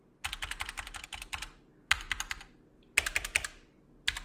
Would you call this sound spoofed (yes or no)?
no